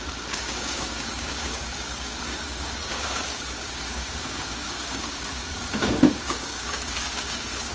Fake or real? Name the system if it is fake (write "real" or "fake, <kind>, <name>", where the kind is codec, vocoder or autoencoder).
fake, codec, DAC